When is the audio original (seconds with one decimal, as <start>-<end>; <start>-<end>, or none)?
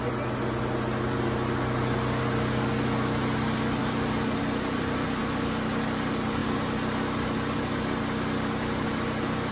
0.0-9.5